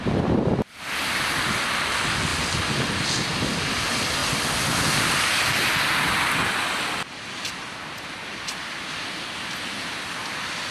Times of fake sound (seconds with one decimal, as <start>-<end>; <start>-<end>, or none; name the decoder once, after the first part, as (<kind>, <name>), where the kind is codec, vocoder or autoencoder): none